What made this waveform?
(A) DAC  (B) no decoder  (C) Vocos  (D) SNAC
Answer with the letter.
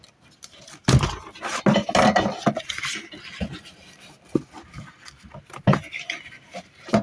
B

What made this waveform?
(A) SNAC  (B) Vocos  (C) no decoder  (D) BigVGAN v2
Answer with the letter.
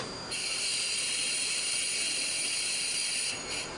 D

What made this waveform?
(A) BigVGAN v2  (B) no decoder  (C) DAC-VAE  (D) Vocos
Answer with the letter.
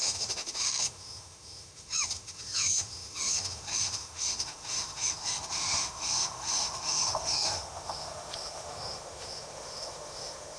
C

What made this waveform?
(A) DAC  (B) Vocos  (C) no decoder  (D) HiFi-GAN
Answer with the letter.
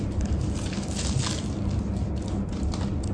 C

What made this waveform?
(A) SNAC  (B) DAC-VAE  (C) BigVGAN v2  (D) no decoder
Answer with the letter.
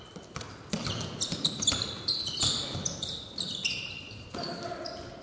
D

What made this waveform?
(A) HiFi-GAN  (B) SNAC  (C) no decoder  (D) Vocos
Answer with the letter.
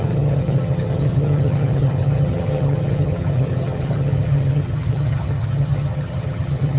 A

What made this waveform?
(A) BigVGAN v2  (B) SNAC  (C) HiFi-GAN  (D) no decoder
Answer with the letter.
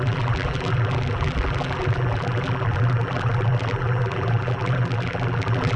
A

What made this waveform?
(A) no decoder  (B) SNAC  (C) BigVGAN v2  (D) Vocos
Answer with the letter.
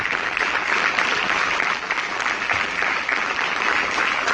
C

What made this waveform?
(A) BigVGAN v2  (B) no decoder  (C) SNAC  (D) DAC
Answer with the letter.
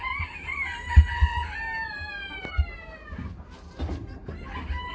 B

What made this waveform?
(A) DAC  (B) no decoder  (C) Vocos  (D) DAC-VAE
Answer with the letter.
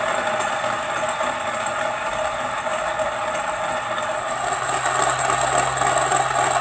B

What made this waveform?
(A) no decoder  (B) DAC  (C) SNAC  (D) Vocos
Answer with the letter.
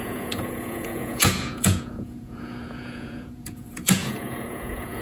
D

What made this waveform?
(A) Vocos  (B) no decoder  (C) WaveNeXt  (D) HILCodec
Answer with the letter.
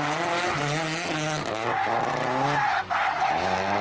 B